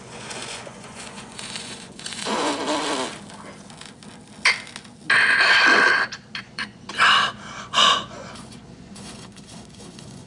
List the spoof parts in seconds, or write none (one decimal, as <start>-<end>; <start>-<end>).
0.0-2.5; 6.4-6.9; 7.6-10.3